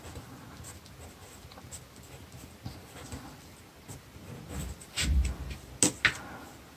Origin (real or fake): real